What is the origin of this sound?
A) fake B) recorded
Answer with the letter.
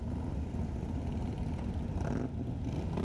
B